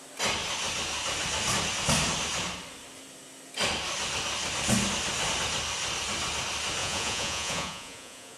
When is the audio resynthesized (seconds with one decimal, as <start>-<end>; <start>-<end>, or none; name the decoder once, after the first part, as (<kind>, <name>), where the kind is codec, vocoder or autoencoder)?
6.8-8.4 (vocoder, Vocos)